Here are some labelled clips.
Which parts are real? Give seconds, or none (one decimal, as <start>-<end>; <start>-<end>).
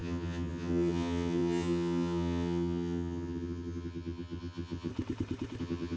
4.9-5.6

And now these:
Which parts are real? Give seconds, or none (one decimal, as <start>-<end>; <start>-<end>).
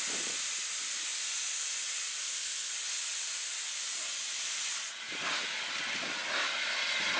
0.0-2.2; 2.7-7.2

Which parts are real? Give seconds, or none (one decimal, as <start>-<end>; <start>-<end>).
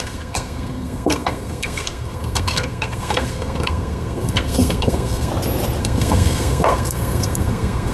5.3-5.8